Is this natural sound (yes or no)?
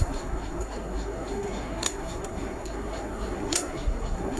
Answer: no